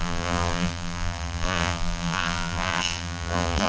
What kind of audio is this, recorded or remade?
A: remade